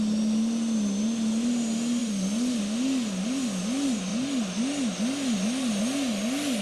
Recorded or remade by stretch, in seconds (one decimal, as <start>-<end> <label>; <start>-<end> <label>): 0.0-2.0 recorded; 2.0-2.6 remade; 2.6-6.6 recorded